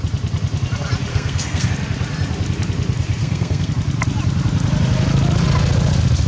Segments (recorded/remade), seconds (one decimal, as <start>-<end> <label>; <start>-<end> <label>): 0.0-1.1 recorded; 1.1-1.7 remade; 1.7-3.2 recorded; 3.2-3.7 remade; 3.7-6.3 recorded